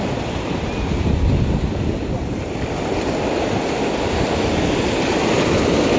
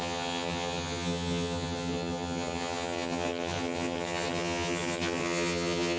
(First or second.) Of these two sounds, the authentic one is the first